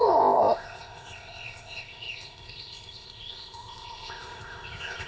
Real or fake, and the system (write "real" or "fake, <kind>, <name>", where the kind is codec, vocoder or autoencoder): fake, codec, ZipCodec